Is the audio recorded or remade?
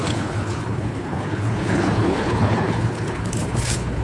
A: remade